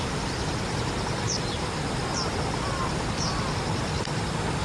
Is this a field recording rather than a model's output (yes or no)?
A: yes